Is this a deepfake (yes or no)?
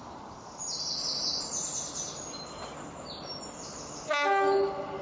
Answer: no